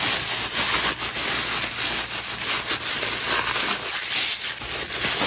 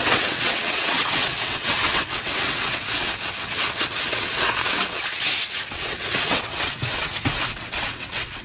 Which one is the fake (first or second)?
second